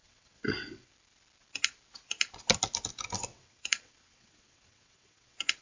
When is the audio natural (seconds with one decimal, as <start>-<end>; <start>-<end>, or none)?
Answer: 0.9-3.3